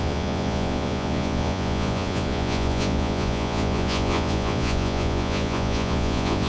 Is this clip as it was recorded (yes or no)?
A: no